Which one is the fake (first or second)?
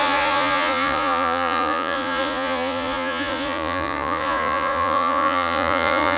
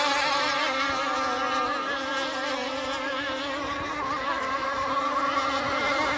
first